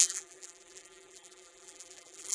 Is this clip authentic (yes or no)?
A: no